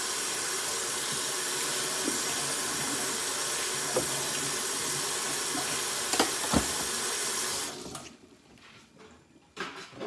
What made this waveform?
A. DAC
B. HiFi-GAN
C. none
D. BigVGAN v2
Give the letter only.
C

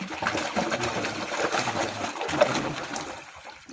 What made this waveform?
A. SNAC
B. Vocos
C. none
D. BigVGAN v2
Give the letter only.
C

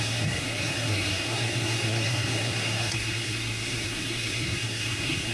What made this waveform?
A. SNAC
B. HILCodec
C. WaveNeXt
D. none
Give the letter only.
A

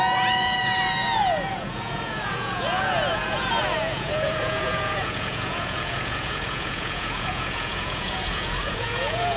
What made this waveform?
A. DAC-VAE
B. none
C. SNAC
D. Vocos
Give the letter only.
D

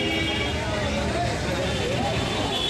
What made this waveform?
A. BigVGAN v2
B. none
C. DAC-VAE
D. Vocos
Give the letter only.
B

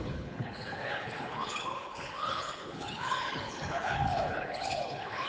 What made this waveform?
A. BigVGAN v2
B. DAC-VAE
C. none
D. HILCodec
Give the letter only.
D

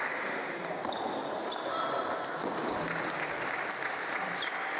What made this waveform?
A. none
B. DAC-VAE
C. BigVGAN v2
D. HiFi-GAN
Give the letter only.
A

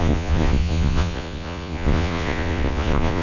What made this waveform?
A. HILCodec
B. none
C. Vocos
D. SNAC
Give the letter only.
C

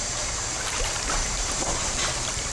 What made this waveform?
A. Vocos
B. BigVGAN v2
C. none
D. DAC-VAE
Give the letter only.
B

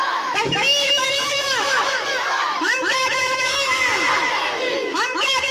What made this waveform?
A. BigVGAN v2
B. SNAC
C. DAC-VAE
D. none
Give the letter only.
C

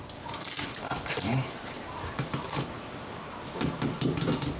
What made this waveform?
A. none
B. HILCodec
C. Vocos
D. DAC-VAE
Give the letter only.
A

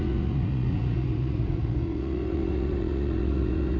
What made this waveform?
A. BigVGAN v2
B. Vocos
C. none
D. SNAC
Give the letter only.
B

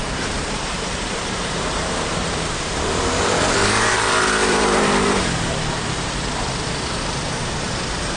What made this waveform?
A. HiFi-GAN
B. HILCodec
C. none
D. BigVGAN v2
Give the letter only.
D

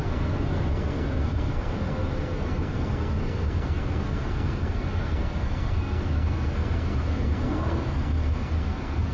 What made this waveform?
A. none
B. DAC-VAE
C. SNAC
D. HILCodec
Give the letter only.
C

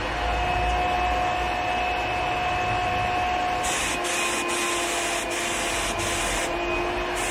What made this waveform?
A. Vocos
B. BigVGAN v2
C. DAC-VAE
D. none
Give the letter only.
D